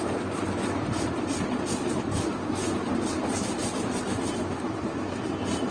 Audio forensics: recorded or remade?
recorded